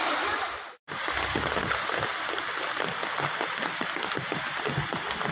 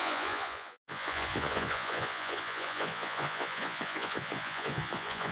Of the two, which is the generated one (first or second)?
second